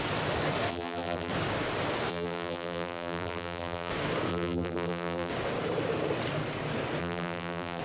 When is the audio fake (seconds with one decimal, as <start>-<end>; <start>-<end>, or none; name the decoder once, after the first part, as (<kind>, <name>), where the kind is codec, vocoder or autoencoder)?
0.7-1.3 (vocoder, BigVGAN v2); 2.1-3.9; 4.3-5.3; 7.0-7.8